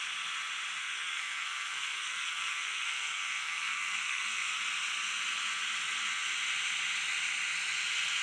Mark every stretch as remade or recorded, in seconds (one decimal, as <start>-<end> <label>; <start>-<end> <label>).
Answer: 0.0-0.8 recorded; 0.8-4.6 remade; 4.6-8.2 recorded